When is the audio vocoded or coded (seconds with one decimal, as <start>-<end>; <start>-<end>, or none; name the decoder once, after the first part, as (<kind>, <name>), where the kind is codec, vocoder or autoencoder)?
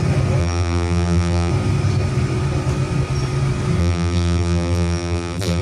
0.4-1.5 (vocoder, BigVGAN v2); 3.8-5.6